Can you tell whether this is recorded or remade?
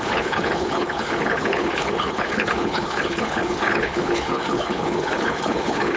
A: remade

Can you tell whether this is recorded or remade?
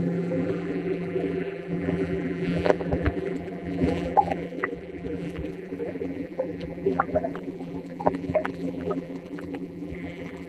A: remade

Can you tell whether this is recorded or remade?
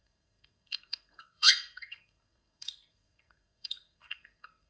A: remade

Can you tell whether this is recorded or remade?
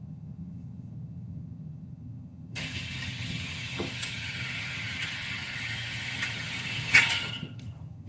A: remade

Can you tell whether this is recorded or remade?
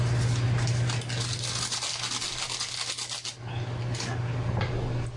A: recorded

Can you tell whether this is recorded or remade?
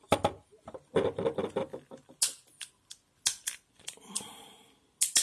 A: recorded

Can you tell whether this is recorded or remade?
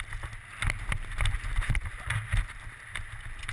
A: recorded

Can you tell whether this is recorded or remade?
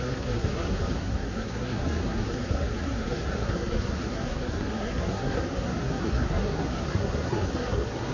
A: remade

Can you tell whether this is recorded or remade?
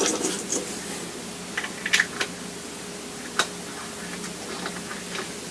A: recorded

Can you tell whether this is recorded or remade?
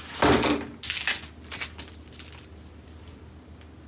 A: recorded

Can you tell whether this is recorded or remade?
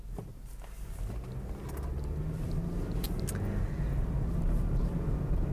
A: recorded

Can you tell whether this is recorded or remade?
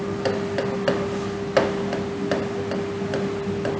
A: recorded